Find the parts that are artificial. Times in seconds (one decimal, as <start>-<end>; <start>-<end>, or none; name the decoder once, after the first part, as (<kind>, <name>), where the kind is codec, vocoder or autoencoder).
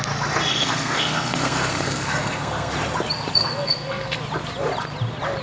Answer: 0.5-2.7 (codec, SNAC); 3.4-4.2